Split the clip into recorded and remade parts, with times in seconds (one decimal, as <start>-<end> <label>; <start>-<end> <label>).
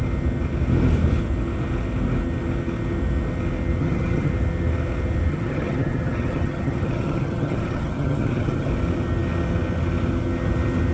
0.0-3.8 recorded; 3.8-4.3 remade; 4.3-5.3 recorded; 5.3-8.7 remade; 8.7-10.9 recorded